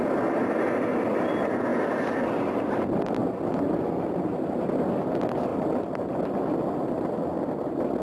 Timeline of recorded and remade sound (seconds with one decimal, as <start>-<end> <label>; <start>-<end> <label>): 0.0-8.0 recorded